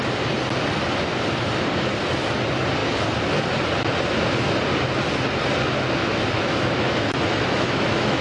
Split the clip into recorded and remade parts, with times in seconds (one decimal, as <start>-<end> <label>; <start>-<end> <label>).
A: 0.0-6.0 recorded; 6.0-8.2 remade